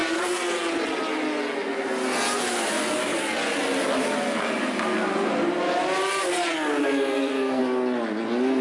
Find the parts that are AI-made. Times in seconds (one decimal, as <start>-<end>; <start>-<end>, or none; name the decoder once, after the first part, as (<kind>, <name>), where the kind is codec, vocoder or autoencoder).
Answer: 6.8-7.6 (codec, SNAC)